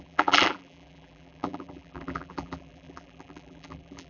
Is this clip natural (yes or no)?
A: no